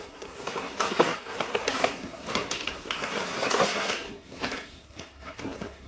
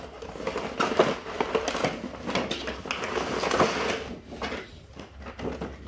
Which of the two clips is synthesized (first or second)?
first